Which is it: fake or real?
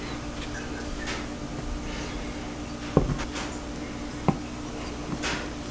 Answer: real